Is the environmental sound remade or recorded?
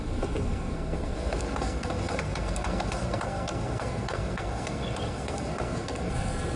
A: remade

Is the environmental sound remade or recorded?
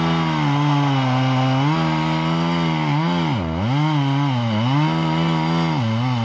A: recorded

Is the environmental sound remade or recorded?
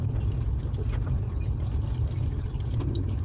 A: recorded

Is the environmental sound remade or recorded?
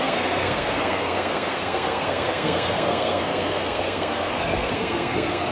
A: remade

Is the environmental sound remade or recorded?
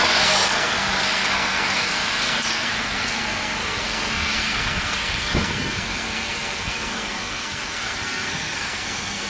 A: remade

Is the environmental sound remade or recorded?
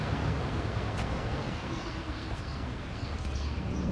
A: remade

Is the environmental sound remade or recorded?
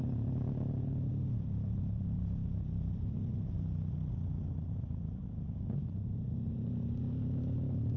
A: recorded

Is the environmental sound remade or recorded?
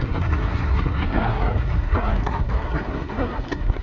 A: remade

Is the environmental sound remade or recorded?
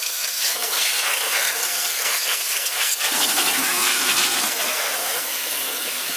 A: remade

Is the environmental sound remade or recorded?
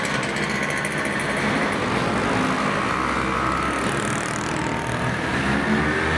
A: recorded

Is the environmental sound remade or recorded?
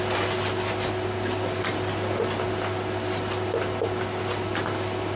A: recorded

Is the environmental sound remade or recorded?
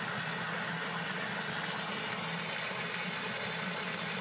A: recorded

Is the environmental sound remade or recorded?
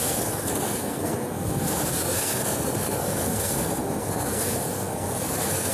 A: remade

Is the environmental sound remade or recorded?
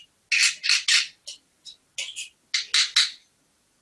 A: recorded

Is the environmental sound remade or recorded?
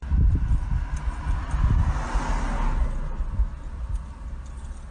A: recorded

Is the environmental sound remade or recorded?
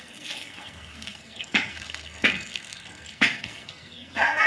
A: remade